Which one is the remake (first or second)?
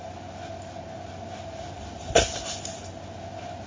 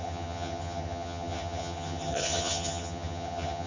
second